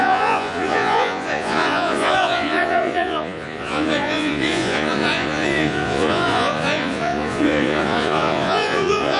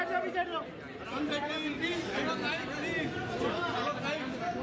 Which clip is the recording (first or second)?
second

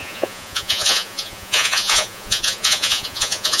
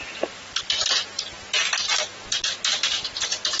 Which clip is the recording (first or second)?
second